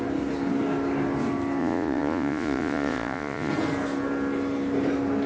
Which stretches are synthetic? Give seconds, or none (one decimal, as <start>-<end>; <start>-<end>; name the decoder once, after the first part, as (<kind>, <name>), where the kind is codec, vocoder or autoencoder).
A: 1.6-3.5 (vocoder, Vocos)